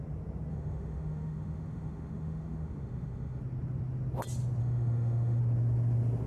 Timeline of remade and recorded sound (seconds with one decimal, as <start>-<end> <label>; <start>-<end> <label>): 0.0-0.5 recorded; 0.5-3.4 remade; 3.4-4.6 recorded; 4.6-5.4 remade; 5.4-6.3 recorded